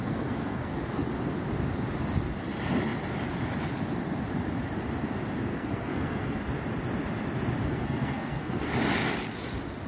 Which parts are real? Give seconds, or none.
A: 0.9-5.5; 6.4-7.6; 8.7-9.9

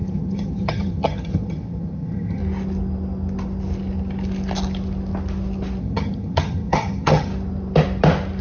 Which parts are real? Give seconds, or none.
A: 2.4-5.8; 7.3-8.4

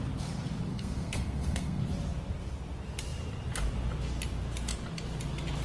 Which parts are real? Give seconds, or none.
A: 0.0-0.7; 1.8-5.6

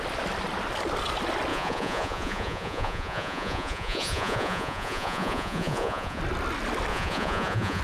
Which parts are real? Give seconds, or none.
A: 0.0-1.5; 6.2-6.9